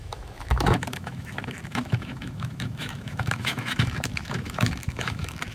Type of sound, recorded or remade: remade